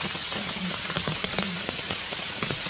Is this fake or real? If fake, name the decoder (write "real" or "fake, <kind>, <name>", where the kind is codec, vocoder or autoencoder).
fake, vocoder, Vocos